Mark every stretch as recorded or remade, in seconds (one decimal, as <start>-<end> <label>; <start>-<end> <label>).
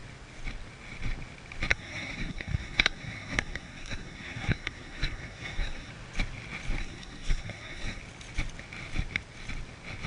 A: 0.0-1.7 recorded; 1.7-5.9 remade; 5.9-6.8 recorded; 6.8-8.0 remade; 8.0-10.1 recorded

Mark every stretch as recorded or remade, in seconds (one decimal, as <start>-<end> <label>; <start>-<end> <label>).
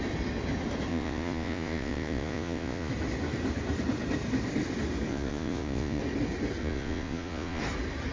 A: 0.0-0.9 recorded; 0.9-2.9 remade; 2.9-5.1 recorded; 5.1-6.0 remade; 6.0-6.6 recorded; 6.6-7.6 remade; 7.6-8.1 recorded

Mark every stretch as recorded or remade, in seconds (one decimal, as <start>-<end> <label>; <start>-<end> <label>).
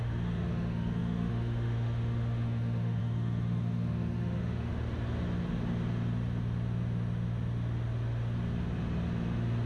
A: 0.0-4.7 remade; 4.7-9.7 recorded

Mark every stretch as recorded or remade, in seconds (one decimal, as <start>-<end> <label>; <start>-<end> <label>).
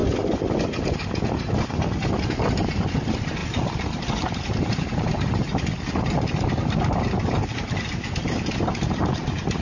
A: 0.0-9.6 recorded